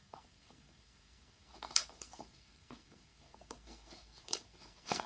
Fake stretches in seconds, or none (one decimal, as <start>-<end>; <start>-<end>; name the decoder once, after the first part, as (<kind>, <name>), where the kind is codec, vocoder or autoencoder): 0.0-5.1 (codec, SNAC)